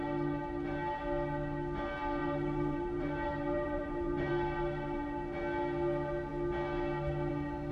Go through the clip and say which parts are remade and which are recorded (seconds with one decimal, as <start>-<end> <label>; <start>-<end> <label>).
0.0-2.2 recorded; 2.2-4.3 remade; 4.3-7.7 recorded